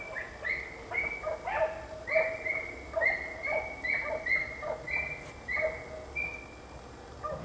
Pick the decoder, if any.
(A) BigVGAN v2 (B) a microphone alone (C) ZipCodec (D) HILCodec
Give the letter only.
B